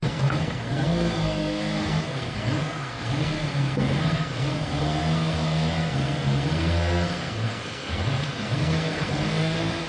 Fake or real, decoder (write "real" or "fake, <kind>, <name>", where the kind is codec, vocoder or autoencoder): fake, codec, SNAC